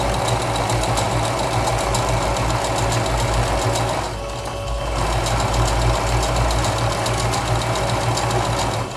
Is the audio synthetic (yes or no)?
no